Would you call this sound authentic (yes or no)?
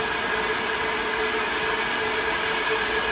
yes